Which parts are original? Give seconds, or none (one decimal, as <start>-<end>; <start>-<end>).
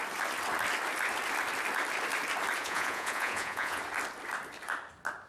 0.0-2.6; 3.8-5.3